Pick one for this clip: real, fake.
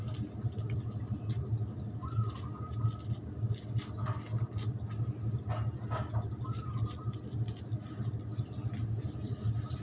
real